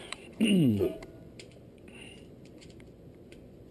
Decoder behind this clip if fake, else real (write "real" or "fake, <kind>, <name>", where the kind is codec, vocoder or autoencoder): fake, vocoder, Vocos